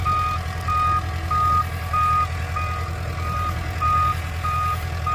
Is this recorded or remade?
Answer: recorded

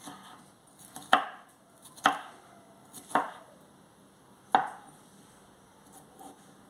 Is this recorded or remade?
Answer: recorded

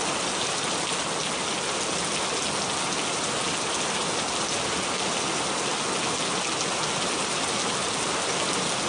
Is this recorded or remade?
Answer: recorded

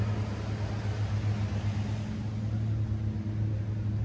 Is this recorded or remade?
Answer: recorded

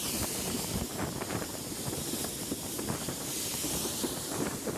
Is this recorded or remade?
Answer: remade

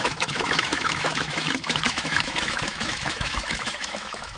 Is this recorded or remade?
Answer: remade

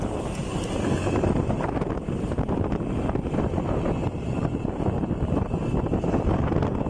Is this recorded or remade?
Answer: recorded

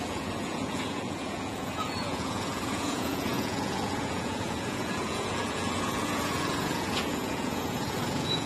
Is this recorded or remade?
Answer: remade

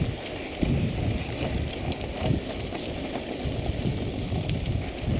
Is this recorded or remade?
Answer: recorded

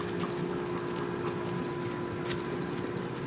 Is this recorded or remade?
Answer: recorded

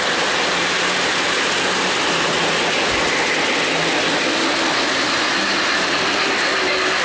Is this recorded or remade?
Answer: recorded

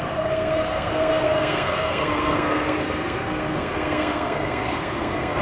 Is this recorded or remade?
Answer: remade